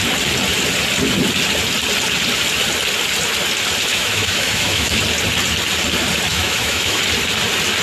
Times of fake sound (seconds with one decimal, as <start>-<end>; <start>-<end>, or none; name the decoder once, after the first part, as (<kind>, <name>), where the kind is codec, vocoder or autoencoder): 3.9-5.0 (autoencoder, DAC-VAE); 6.3-7.0

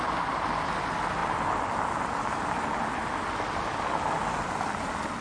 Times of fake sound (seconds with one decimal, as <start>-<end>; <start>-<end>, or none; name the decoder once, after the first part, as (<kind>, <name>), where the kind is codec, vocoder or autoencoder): none